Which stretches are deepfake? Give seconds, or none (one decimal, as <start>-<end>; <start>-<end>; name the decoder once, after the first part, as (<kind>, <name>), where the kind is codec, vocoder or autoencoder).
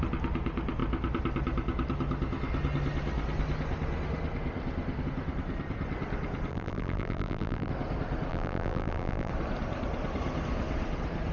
6.5-7.7 (vocoder, BigVGAN v2); 8.3-9.3